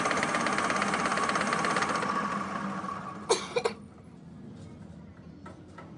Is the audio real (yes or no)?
yes